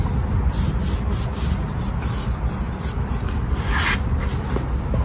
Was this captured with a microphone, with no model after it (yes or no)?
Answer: yes